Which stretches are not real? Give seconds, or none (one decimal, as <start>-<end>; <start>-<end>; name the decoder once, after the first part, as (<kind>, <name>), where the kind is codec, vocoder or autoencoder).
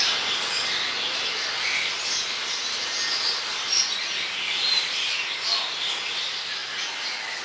none